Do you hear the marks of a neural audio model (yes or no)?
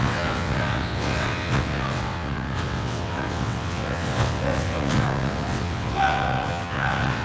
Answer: yes